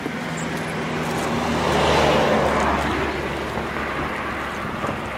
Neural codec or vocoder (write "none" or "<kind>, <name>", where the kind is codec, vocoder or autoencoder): none